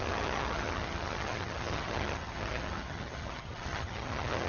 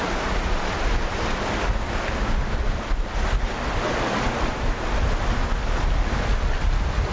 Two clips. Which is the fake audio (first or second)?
first